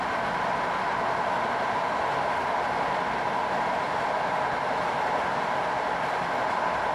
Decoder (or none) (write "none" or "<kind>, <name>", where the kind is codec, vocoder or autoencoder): none